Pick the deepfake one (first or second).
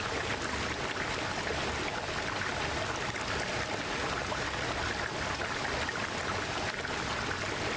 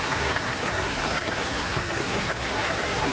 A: second